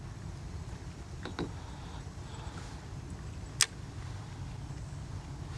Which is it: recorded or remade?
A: recorded